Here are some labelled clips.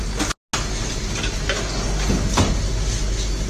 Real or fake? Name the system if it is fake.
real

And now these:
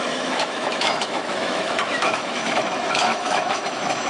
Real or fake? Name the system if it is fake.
fake, autoencoder, DAC-VAE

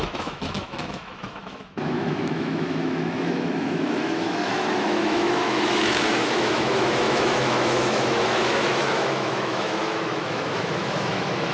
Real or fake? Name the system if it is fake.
fake, autoencoder, DAC-VAE